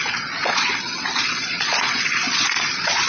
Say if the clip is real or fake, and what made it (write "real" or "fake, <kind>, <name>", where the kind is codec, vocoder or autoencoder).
fake, vocoder, Vocos